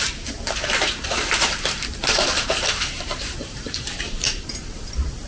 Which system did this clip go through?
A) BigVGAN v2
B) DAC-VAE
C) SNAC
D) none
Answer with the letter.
A